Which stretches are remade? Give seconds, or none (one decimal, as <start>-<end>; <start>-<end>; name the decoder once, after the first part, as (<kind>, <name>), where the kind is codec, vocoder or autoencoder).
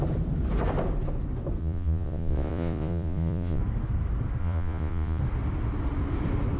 1.6-3.6 (vocoder, Vocos); 4.4-5.2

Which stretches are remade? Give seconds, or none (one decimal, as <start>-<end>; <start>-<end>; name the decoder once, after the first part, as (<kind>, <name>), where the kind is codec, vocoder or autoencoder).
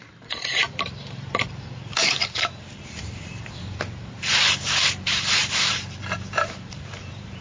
0.0-7.4 (vocoder, BigVGAN v2)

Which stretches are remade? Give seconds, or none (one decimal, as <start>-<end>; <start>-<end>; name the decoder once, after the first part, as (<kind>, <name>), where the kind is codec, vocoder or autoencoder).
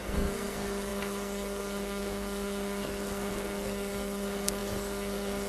0.0-5.5 (codec, SNAC)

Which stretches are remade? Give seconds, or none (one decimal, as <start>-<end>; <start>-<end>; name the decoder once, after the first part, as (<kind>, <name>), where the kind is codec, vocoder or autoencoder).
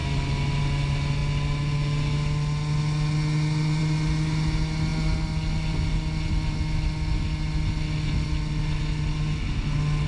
none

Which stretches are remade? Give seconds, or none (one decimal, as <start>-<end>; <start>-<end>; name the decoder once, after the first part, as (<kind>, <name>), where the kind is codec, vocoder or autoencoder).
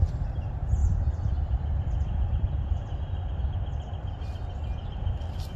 0.8-3.4 (vocoder, BigVGAN v2)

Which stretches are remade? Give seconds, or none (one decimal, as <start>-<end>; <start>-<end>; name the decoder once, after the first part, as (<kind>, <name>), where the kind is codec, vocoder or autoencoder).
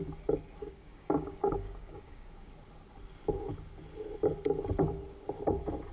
0.6-2.5 (codec, DAC)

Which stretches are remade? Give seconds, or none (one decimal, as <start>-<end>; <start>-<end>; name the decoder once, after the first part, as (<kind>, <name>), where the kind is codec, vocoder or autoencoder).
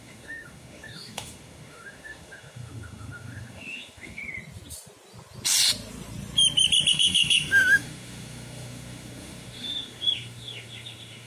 0.0-4.2 (autoencoder, DAC-VAE); 6.9-11.3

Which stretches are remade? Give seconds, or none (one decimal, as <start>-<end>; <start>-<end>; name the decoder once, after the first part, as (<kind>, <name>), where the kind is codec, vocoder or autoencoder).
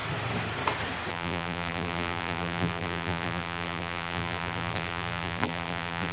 1.1-6.1 (vocoder, BigVGAN v2)